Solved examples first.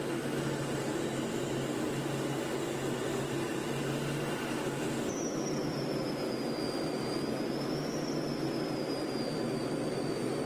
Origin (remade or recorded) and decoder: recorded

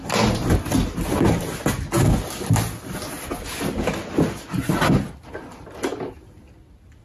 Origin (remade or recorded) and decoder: recorded